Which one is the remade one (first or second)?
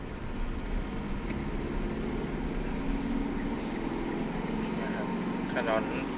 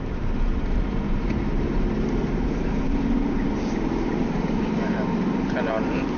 second